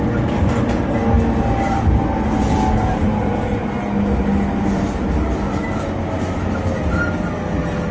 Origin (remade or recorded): recorded